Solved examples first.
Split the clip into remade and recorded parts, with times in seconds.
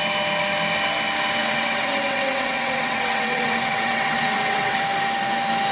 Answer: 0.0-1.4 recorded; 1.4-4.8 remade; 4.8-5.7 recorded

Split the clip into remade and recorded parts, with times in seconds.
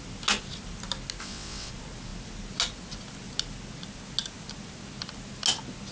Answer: 0.0-1.2 recorded; 1.2-1.7 remade; 1.7-5.9 recorded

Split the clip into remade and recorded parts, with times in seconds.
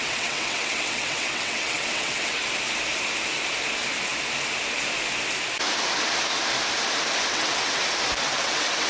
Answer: 0.0-2.4 remade; 2.4-7.3 recorded; 7.3-7.8 remade; 7.8-8.4 recorded; 8.4-8.9 remade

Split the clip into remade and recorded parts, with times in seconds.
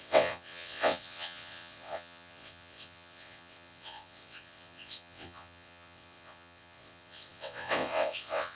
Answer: 0.0-8.6 remade